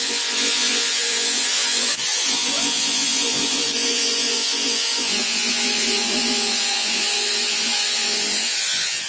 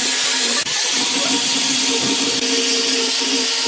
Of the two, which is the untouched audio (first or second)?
second